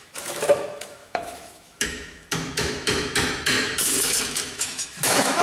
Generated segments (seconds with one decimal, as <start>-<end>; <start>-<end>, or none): 0.0-5.4